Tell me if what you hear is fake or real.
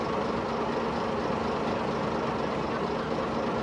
real